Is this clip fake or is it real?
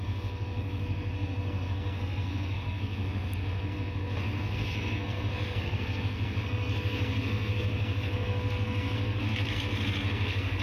fake